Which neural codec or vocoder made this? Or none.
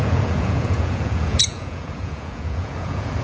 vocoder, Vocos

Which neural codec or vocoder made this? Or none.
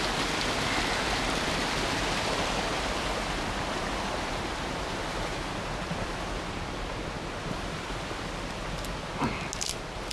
none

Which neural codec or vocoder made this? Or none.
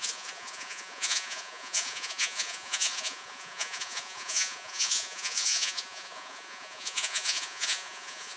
vocoder, Vocos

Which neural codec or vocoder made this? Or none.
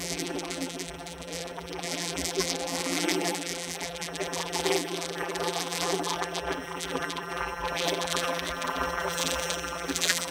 vocoder, BigVGAN v2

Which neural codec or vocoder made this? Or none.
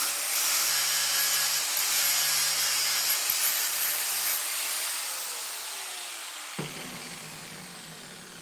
none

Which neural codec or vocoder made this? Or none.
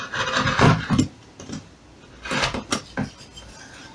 none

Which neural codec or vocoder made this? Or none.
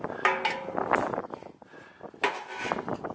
none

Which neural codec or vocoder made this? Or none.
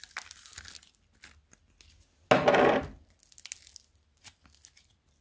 none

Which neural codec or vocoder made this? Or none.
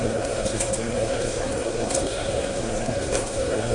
codec, SNAC